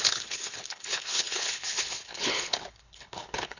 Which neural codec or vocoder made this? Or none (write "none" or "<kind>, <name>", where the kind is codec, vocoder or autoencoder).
codec, HILCodec